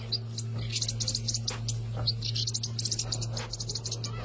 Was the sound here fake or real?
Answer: real